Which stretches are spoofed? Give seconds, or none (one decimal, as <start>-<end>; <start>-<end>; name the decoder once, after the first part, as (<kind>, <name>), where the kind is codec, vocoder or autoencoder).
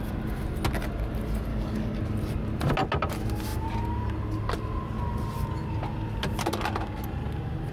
1.5-2.0 (codec, DAC)